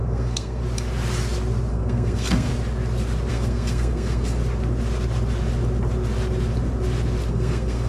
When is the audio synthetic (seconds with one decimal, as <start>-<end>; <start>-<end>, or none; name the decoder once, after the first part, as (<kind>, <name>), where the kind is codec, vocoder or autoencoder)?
0.0-0.6 (codec, SNAC); 1.7-2.5; 3.3-4.4; 7.3-7.9